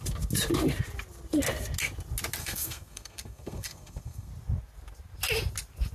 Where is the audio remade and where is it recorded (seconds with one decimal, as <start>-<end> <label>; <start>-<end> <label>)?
0.0-2.4 recorded; 2.4-4.3 remade; 4.3-5.9 recorded